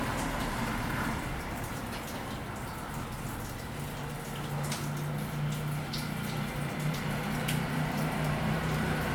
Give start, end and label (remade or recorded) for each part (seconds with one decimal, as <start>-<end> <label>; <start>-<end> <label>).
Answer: 0.0-2.2 remade; 2.2-5.8 recorded; 5.8-9.1 remade